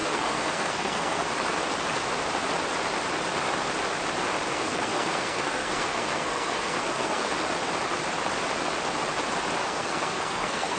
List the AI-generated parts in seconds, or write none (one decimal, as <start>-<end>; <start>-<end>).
0.0-1.3; 4.5-7.3; 9.6-10.8